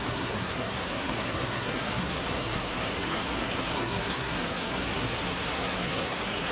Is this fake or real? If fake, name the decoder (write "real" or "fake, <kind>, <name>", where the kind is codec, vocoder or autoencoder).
fake, codec, SNAC